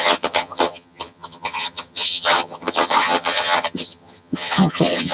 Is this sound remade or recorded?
remade